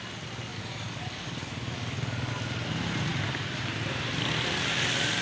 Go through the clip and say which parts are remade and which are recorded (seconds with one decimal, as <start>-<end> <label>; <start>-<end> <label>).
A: 0.0-0.5 recorded; 0.5-2.3 remade; 2.3-5.2 recorded